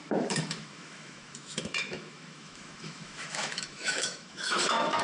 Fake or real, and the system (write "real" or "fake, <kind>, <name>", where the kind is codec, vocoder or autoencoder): fake, autoencoder, DAC-VAE